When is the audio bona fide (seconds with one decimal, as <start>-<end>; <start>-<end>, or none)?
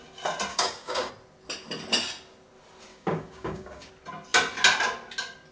0.0-0.5; 1.1-2.9; 3.9-5.5